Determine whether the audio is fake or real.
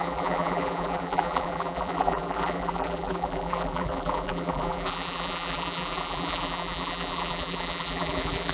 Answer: fake